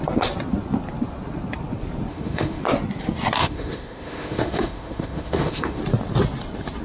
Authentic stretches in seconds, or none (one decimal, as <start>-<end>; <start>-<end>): 0.0-2.1; 2.6-3.4; 5.8-6.8